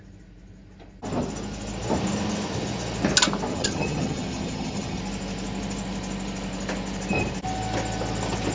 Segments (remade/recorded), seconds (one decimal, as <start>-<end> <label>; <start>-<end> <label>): 0.0-3.5 recorded; 3.5-5.0 remade; 5.0-8.5 recorded